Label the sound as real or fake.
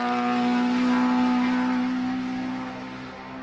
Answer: real